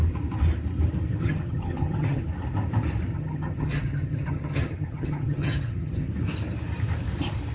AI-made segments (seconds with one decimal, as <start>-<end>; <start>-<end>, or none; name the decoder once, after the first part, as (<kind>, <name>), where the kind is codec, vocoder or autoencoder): 1.2-2.2 (vocoder, HiFi-GAN); 3.1-6.1